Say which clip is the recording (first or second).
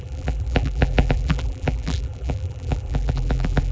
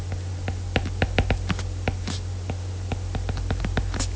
second